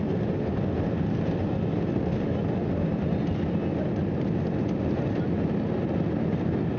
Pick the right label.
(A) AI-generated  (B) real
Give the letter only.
B